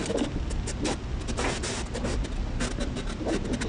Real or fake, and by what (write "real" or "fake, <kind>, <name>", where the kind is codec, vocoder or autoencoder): real